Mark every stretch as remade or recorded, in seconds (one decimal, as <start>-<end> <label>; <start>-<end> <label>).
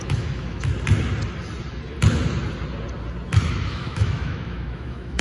0.0-0.7 remade; 0.7-3.5 recorded; 3.5-5.2 remade